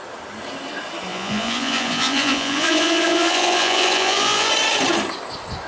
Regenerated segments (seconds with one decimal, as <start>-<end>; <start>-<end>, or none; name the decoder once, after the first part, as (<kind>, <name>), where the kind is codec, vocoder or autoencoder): 1.1-4.5 (vocoder, Vocos)